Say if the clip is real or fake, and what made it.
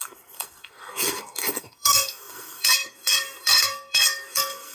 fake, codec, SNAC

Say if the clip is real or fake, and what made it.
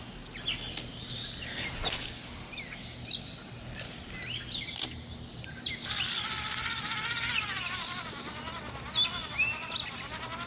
real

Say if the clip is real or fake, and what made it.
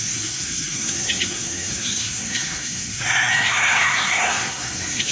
fake, codec, SNAC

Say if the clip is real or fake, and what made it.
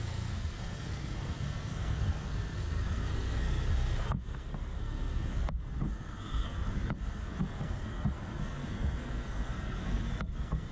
fake, codec, SNAC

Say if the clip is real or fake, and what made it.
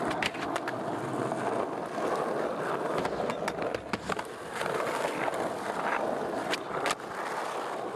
real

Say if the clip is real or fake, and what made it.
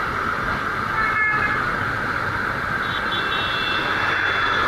real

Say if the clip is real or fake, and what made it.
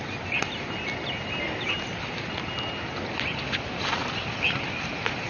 real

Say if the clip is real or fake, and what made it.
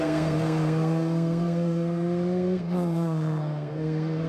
fake, codec, SNAC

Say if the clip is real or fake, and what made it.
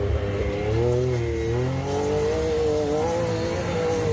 real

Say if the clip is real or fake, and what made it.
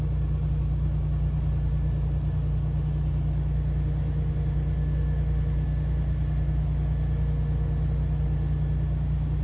real